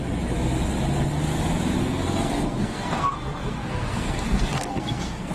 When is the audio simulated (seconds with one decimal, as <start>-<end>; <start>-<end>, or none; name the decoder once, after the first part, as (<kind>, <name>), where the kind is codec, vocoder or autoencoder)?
1.8-5.3 (codec, SNAC)